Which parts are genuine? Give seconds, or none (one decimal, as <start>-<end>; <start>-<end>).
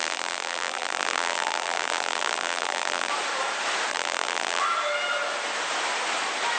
3.1-3.9; 4.6-6.6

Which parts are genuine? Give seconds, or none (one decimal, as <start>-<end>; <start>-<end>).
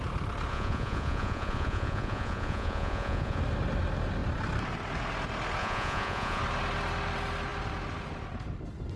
0.0-0.5; 3.4-5.6; 6.4-9.0